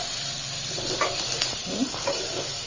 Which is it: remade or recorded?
remade